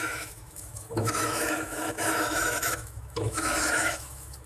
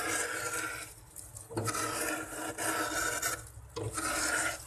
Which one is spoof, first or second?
first